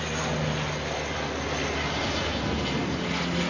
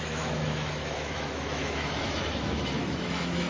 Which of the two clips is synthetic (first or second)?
second